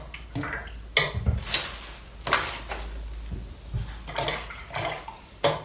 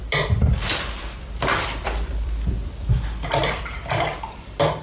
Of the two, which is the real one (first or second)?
first